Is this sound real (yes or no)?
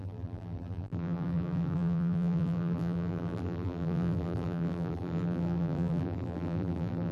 no